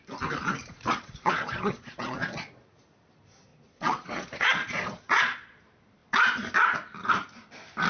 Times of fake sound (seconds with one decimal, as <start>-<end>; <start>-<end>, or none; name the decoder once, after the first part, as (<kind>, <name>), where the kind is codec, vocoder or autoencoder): 0.6-2.7 (vocoder, Vocos); 3.5-5.6